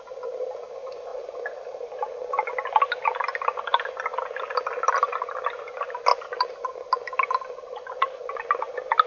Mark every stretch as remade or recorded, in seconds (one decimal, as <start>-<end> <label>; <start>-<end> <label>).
0.0-9.1 recorded